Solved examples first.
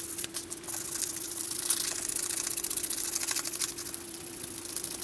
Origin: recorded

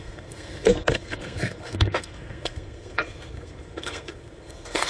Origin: remade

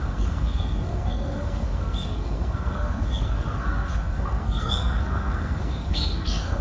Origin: remade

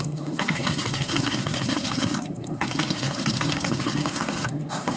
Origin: remade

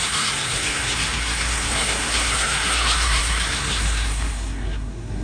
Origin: remade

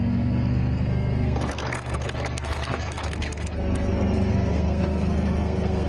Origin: remade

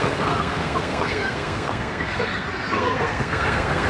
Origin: remade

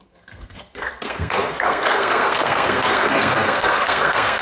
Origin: remade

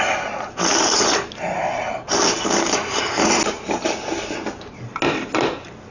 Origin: recorded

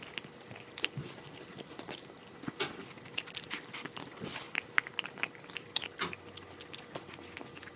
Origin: recorded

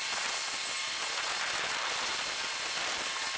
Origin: recorded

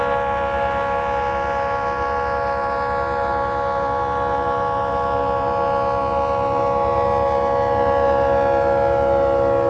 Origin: recorded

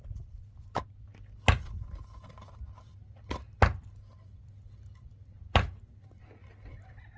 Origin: recorded